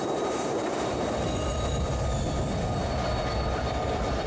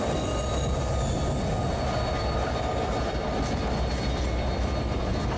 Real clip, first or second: second